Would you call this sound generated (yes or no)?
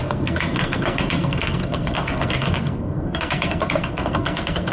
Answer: yes